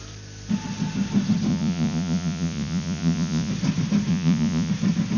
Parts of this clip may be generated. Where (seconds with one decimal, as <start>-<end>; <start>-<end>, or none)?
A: 1.5-3.5; 4.1-4.7